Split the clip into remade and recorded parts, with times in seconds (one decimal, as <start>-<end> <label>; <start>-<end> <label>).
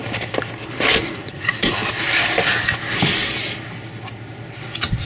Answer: 0.0-1.1 recorded; 1.1-1.8 remade; 1.8-5.1 recorded